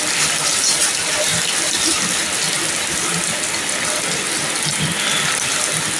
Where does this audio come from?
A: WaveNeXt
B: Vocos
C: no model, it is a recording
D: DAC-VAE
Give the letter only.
C